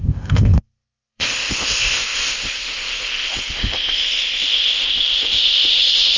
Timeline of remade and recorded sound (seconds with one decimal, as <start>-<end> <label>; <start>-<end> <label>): 0.0-6.2 remade